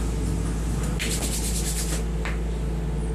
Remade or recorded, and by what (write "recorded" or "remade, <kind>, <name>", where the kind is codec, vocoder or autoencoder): recorded